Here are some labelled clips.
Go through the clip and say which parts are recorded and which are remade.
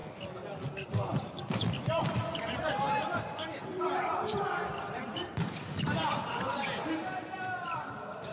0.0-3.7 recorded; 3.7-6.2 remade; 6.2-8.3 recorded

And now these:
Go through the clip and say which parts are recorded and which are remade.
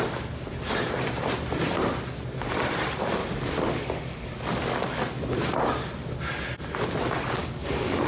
0.0-3.2 recorded; 3.2-5.0 remade; 5.0-7.4 recorded; 7.4-8.1 remade